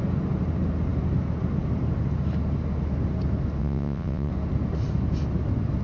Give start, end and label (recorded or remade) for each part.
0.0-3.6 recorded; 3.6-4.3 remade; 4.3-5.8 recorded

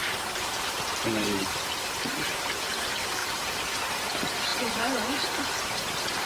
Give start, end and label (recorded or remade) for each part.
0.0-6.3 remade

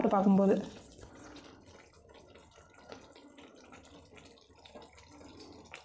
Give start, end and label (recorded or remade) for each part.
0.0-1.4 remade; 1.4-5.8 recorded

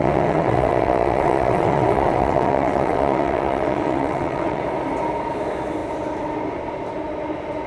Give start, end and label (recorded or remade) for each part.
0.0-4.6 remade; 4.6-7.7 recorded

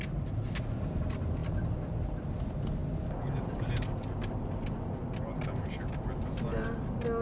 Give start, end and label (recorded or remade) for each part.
0.0-7.2 recorded

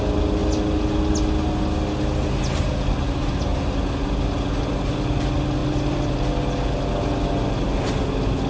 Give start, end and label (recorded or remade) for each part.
0.0-8.5 recorded

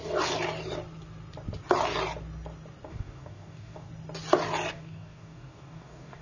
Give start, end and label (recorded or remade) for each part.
0.0-2.9 recorded; 2.9-3.9 remade; 3.9-4.7 recorded; 4.7-6.2 remade